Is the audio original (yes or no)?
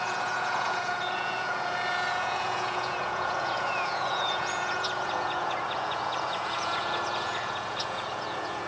no